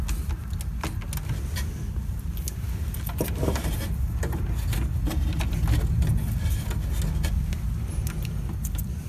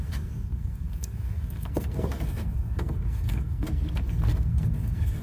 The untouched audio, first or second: first